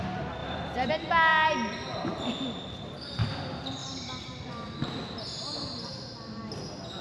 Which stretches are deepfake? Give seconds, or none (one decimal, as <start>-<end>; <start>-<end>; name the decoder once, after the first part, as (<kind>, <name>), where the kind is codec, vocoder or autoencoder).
0.4-0.9 (vocoder, BigVGAN v2)